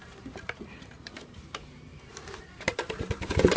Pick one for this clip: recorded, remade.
remade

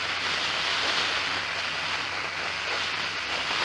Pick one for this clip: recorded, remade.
recorded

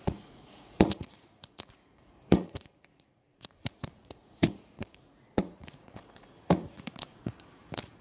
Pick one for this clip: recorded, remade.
remade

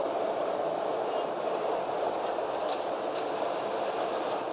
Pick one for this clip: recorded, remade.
remade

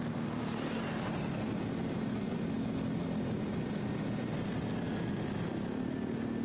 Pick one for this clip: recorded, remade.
recorded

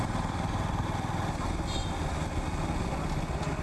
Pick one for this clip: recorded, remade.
recorded